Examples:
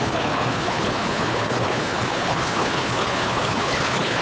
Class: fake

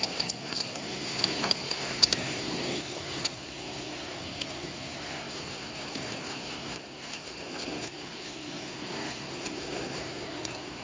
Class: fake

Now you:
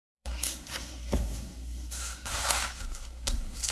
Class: fake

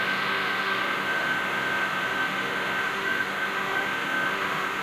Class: fake